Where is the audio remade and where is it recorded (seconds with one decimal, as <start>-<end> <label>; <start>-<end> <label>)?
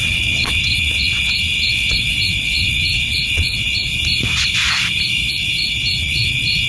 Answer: 0.0-3.9 remade; 3.9-5.3 recorded; 5.3-6.7 remade